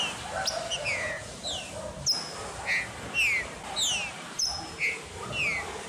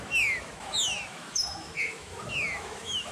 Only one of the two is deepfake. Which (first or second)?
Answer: second